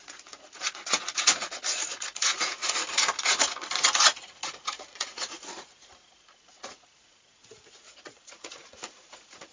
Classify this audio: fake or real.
fake